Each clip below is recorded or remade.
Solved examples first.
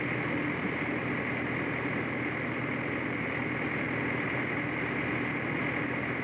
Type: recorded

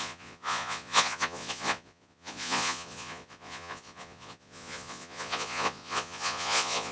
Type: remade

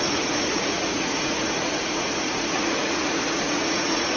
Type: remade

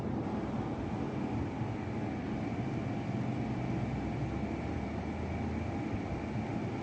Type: recorded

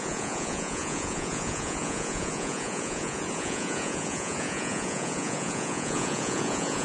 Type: remade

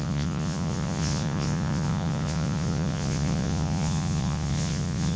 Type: remade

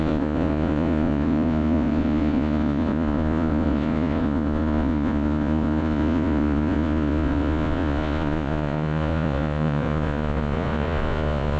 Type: remade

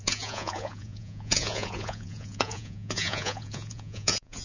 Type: remade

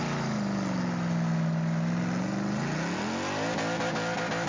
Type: recorded